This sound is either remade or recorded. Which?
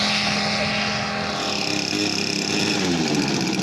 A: recorded